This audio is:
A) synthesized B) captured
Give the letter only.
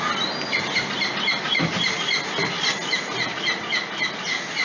B